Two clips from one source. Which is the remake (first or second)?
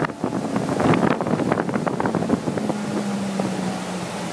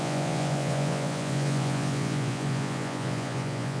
second